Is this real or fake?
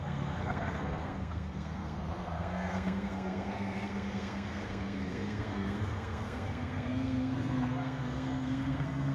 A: fake